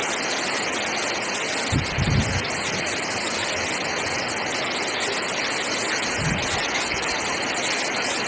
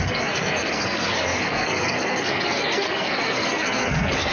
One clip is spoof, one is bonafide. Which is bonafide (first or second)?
first